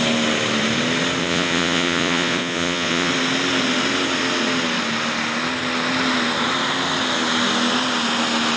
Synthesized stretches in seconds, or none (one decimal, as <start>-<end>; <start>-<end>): 1.2-3.1